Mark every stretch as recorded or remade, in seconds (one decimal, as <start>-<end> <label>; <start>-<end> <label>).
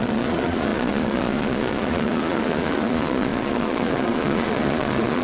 0.0-5.2 remade